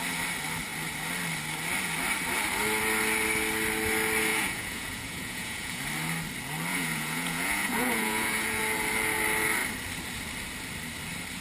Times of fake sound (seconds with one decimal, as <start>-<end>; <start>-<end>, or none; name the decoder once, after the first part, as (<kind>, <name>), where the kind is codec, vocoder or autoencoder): 4.3-5.8 (vocoder, Vocos); 6.7-8.6